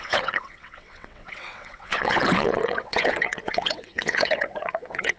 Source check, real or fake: fake